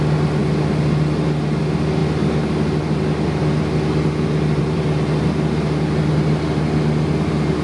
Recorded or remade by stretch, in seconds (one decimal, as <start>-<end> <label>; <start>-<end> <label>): 0.0-7.6 recorded